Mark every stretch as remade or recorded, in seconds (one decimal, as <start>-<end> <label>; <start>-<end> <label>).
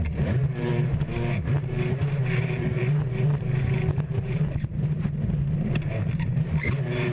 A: 0.0-0.7 remade; 0.7-1.4 recorded; 1.4-7.1 remade